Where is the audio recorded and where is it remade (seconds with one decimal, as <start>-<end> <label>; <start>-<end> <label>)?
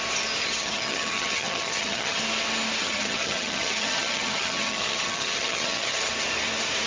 0.0-0.4 recorded; 0.4-2.2 remade; 2.2-2.8 recorded; 2.8-6.1 remade; 6.1-6.9 recorded